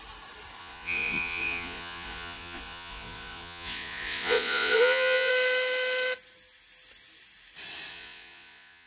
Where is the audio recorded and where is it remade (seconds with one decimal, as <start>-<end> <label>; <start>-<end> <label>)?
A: 0.0-0.6 recorded; 0.6-5.3 remade; 5.3-7.9 recorded; 7.9-8.9 remade